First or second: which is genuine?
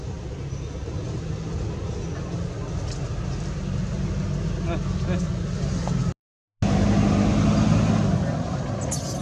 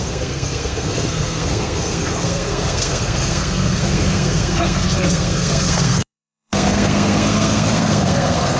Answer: first